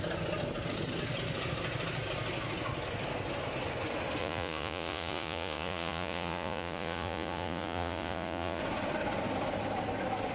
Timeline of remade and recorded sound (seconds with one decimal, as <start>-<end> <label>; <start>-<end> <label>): 0.0-4.2 recorded; 4.2-8.6 remade; 8.6-10.3 recorded